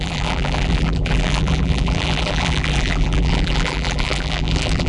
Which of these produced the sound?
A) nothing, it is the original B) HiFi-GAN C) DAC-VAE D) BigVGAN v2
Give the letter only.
D